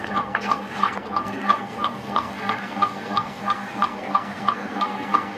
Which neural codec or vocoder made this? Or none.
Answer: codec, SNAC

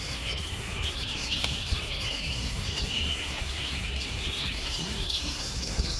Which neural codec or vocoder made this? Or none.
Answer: codec, SNAC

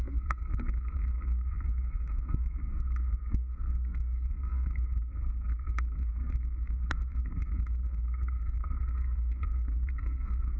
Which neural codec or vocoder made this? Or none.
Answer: codec, SNAC